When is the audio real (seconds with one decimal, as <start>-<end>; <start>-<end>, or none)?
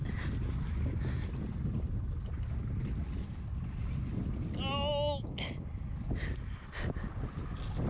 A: 0.0-7.9